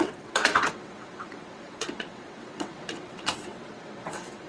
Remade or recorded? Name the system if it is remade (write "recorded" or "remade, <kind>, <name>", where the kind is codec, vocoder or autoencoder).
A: remade, vocoder, WaveNeXt